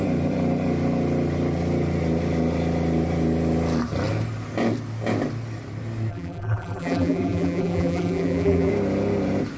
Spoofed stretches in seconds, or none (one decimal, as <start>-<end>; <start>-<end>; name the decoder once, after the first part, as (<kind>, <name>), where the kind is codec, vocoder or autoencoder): 6.1-8.7 (vocoder, BigVGAN v2)